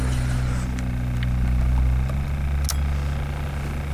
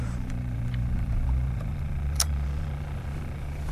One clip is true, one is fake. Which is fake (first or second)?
second